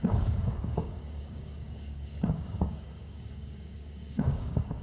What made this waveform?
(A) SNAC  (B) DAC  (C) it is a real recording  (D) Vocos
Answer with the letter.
B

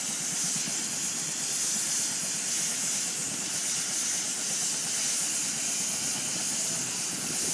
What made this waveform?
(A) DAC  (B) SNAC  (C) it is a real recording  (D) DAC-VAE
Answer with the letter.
C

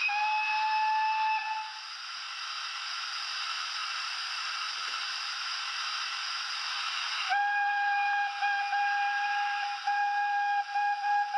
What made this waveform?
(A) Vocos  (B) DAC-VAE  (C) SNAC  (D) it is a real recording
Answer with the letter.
D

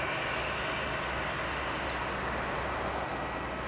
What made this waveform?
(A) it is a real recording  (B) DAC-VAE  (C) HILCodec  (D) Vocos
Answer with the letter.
A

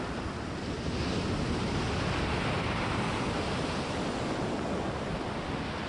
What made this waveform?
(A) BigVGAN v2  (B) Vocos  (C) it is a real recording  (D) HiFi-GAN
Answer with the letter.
C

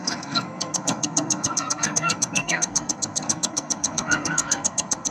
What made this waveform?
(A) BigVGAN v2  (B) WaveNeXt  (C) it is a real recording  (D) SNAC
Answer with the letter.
D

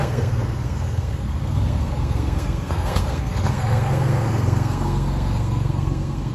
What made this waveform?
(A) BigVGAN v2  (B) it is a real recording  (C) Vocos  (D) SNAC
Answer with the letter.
D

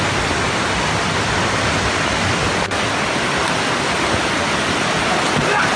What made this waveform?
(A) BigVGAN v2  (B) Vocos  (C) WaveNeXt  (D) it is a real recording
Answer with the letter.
D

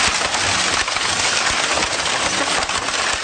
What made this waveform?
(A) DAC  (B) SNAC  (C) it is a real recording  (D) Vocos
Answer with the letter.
C